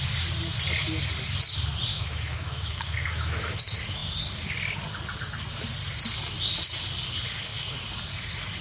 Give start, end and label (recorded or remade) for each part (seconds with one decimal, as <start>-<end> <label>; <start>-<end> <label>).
0.0-1.9 recorded; 1.9-3.4 remade; 3.4-8.6 recorded